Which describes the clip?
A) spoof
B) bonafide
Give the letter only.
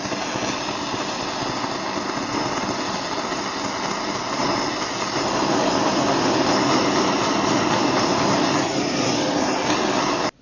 B